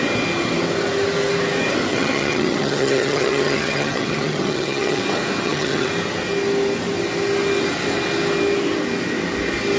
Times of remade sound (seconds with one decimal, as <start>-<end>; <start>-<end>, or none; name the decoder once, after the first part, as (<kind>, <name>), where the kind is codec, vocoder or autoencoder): 1.9-5.0 (vocoder, HiFi-GAN); 5.4-5.9